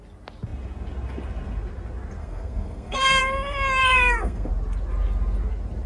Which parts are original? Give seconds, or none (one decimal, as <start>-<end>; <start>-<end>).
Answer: 0.0-2.2; 3.2-3.8; 4.5-5.9